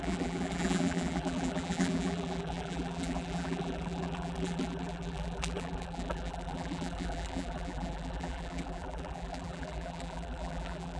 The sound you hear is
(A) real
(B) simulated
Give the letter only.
B